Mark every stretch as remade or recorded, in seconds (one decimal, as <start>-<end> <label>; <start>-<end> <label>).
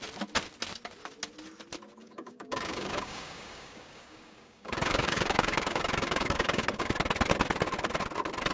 0.0-2.0 recorded; 2.0-6.9 remade; 6.9-8.5 recorded